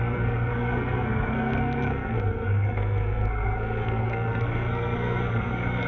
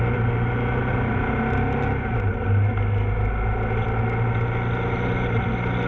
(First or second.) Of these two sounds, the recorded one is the second